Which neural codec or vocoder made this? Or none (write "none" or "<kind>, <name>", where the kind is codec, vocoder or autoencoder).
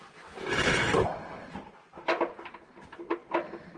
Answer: none